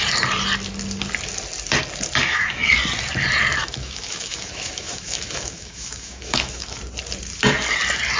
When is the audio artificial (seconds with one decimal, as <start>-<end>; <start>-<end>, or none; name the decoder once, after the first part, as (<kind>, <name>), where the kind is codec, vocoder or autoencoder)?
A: 2.2-2.7 (autoencoder, DAC-VAE); 3.6-6.8